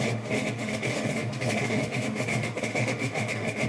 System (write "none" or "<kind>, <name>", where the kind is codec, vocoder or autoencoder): autoencoder, DAC-VAE